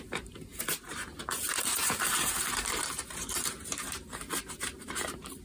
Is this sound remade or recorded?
remade